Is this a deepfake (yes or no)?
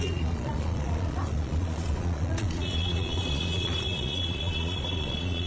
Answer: yes